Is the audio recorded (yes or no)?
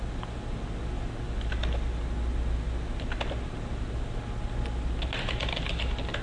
yes